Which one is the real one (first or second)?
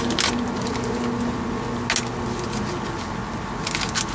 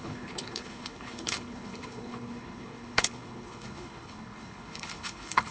first